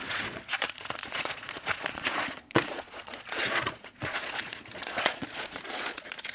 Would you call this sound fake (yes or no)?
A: yes